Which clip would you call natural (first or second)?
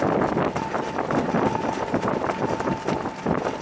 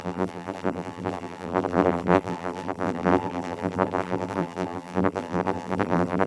first